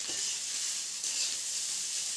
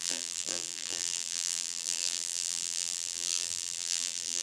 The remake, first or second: second